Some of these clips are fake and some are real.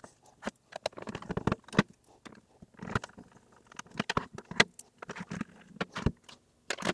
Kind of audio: real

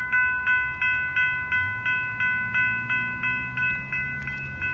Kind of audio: real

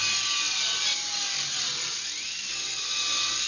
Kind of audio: real